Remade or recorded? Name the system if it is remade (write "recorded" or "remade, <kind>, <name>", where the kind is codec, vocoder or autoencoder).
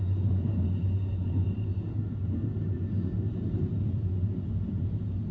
recorded